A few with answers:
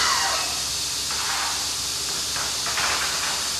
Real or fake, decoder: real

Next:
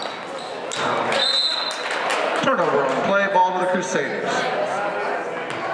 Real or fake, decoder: real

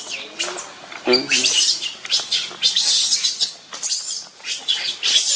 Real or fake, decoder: real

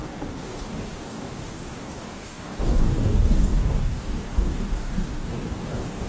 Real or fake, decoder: fake, codec, DAC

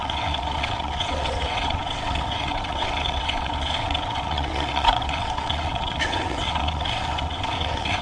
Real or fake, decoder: fake, vocoder, WaveNeXt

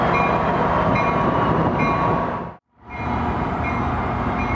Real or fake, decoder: fake, vocoder, BigVGAN v2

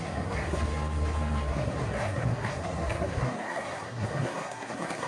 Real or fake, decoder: fake, codec, SNAC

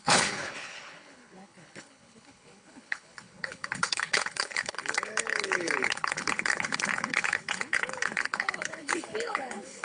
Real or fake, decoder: fake, codec, HILCodec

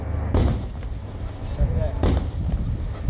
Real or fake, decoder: real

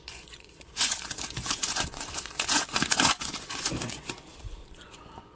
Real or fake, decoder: fake, vocoder, Vocos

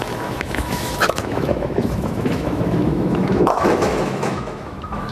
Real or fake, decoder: fake, autoencoder, DAC-VAE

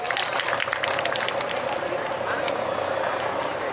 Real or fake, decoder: real